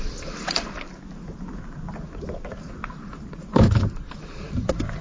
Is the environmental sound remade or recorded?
recorded